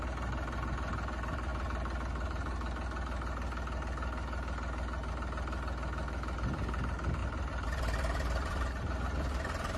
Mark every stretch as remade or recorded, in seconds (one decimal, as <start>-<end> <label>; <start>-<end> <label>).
0.0-7.2 recorded; 7.2-9.8 remade